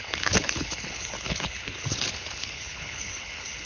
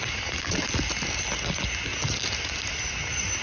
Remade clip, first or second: first